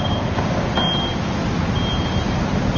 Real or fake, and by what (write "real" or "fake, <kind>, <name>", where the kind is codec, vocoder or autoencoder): real